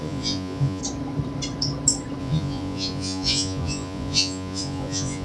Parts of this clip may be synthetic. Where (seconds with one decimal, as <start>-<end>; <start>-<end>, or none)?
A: 0.0-0.8; 2.2-5.2